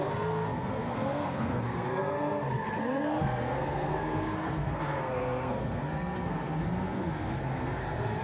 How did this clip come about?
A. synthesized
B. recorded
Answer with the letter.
A